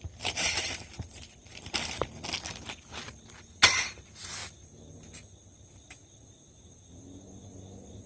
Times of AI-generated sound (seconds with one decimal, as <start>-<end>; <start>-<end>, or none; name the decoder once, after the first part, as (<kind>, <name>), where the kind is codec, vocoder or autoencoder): none